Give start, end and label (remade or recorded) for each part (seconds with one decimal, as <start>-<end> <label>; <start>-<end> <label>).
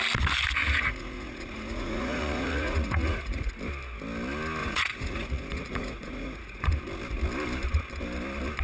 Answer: 0.0-0.6 recorded; 0.6-3.5 remade; 3.5-4.6 recorded; 4.6-6.8 remade; 6.8-8.6 recorded